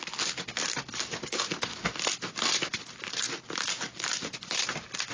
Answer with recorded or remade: recorded